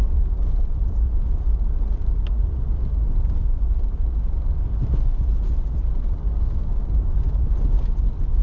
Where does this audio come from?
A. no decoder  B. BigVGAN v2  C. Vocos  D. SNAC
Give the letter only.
B